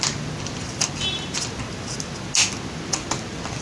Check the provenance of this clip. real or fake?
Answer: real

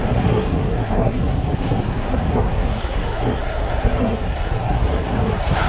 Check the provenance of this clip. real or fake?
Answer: fake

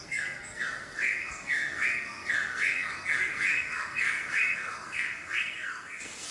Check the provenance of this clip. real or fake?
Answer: fake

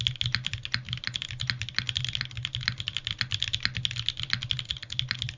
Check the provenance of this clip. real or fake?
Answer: real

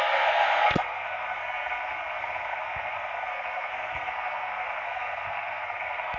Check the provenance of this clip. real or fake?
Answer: fake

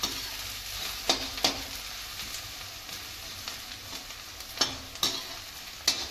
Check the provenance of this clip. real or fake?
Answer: real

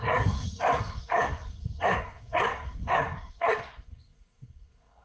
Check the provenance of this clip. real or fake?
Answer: fake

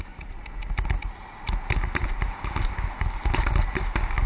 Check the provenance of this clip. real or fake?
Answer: real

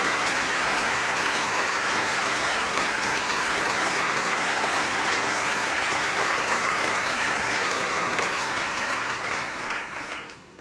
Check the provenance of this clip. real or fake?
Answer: fake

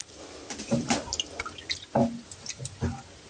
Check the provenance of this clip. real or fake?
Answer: real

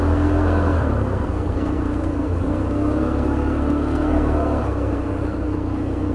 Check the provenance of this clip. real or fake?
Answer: fake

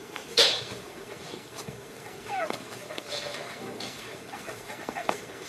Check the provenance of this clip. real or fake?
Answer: fake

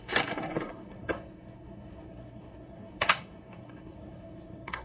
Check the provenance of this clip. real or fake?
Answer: fake